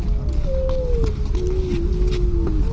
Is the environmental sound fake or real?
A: real